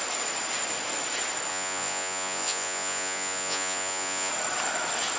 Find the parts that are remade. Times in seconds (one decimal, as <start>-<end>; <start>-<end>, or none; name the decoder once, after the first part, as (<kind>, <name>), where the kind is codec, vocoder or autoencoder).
1.5-4.3 (vocoder, Vocos)